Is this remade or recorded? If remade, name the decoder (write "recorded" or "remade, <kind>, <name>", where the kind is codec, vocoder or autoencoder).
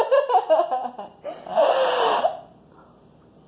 recorded